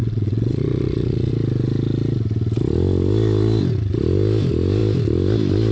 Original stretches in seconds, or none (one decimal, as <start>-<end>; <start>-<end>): 1.3-5.7